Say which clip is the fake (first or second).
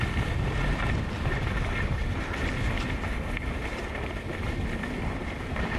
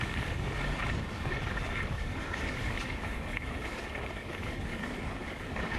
second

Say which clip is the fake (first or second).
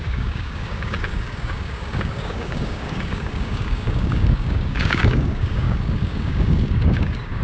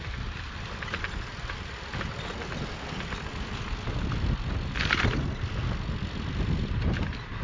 first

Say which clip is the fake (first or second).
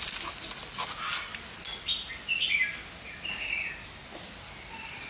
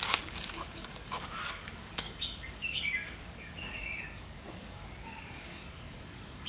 second